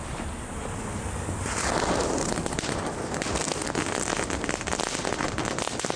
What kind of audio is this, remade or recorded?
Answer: recorded